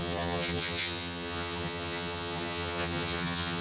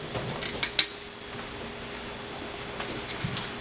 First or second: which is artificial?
first